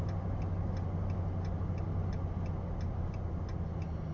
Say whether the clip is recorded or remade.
recorded